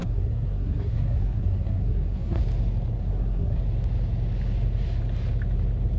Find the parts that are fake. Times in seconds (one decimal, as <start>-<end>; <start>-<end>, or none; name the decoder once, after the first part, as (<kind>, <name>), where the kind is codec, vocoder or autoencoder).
0.0-2.4 (codec, SNAC); 3.0-3.6